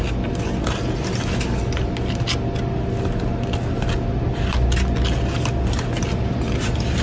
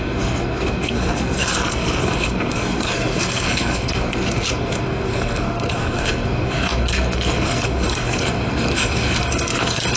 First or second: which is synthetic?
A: second